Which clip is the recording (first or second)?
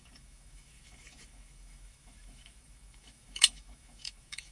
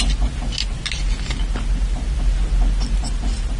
second